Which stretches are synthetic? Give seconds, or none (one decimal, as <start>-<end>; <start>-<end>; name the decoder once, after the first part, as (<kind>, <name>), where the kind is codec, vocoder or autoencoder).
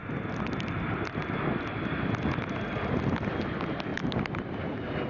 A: none